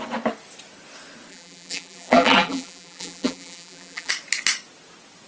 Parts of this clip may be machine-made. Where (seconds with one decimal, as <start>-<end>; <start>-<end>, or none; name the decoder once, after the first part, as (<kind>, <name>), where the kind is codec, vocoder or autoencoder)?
1.3-4.1 (vocoder, BigVGAN v2)